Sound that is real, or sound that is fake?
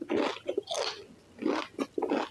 real